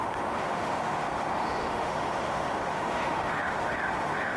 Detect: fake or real fake